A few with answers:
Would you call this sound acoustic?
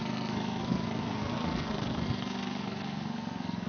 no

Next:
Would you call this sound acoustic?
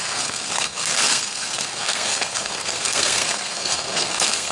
no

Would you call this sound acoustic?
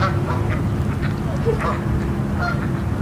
yes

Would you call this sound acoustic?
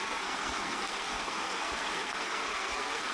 no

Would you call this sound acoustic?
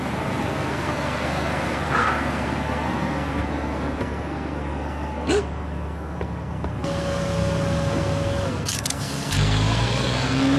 no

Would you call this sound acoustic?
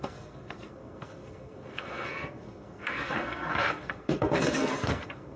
no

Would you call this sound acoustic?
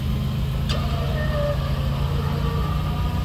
yes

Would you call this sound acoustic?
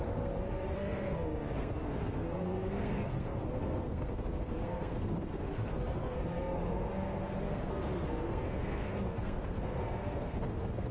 no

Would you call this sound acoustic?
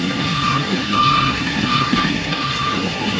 no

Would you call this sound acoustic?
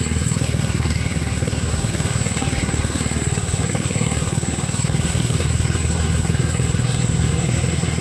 no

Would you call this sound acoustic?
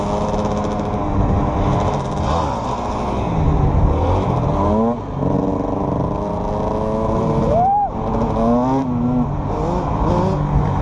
yes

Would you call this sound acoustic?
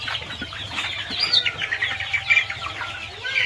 yes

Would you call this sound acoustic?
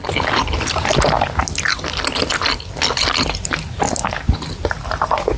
yes